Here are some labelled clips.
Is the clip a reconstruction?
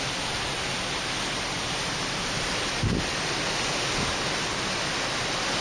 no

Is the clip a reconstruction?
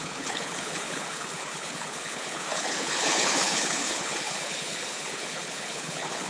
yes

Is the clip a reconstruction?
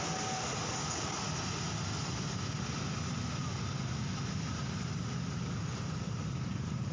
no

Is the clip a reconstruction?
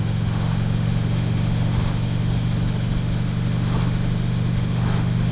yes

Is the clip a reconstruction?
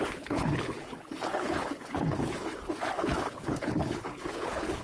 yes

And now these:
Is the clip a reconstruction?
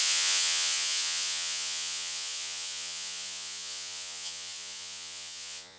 yes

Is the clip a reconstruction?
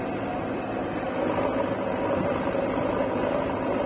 no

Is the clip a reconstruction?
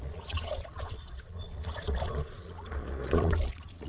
yes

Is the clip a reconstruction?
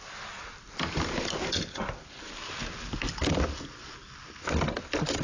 no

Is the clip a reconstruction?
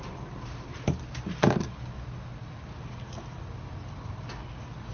no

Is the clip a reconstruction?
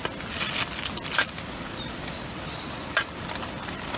yes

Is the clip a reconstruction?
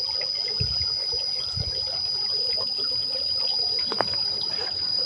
no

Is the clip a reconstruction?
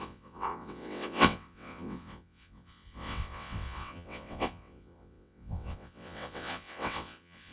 yes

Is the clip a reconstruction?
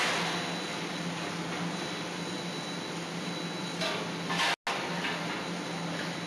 no